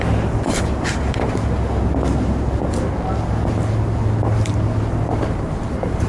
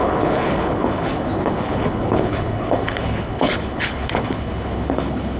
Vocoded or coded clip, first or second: second